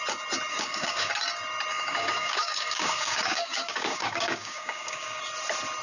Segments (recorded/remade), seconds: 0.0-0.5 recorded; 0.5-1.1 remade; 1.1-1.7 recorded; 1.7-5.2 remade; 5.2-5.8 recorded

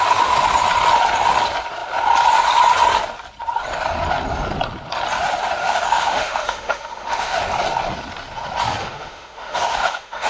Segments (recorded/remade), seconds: 0.0-5.6 recorded; 5.6-7.4 remade; 7.4-8.8 recorded; 8.8-10.3 remade

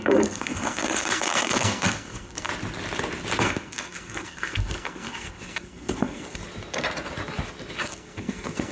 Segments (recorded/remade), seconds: 0.0-2.5 remade; 2.5-3.4 recorded; 3.4-6.4 remade; 6.4-7.8 recorded; 7.8-8.7 remade

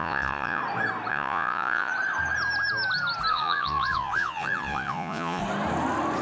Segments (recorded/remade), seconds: 0.0-0.6 remade; 0.6-1.1 recorded; 1.1-1.9 remade; 1.9-3.3 recorded; 3.3-5.4 remade; 5.4-6.2 recorded

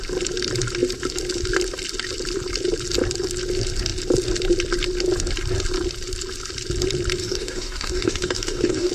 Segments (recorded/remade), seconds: 0.0-7.2 recorded; 7.2-8.9 remade